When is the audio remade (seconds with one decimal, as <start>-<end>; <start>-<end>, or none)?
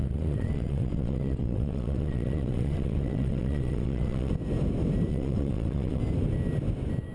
0.0-4.3; 5.1-6.0